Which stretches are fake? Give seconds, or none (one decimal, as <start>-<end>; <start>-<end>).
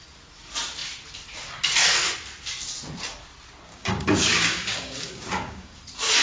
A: 3.7-5.8